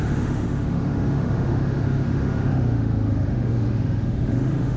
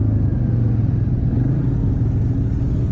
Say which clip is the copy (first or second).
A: first